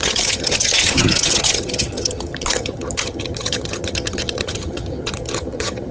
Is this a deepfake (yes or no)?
yes